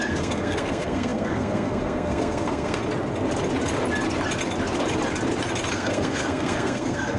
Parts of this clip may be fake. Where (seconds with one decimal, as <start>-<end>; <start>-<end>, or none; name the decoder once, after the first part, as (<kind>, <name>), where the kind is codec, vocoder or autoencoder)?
0.0-2.8 (codec, SNAC); 5.7-7.2